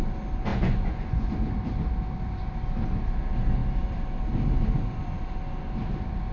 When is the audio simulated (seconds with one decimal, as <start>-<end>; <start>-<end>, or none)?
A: 0.5-1.3